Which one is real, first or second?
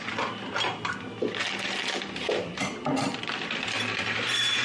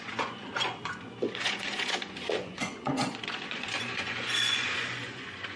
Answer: first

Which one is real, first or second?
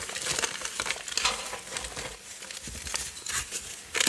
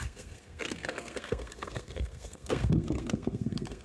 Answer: first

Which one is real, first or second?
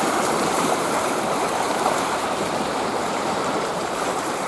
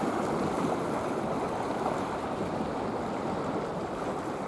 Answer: second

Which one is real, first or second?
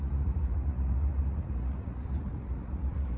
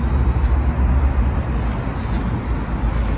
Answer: second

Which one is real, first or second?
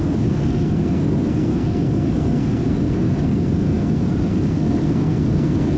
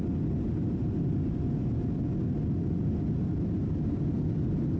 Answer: second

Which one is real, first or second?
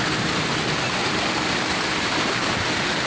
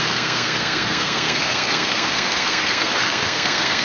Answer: first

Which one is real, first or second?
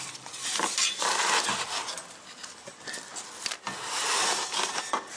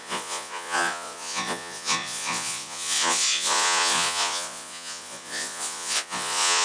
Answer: first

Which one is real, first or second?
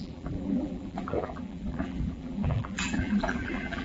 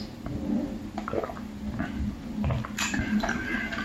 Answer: second